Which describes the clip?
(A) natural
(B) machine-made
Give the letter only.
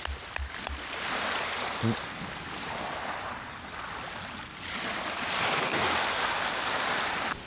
A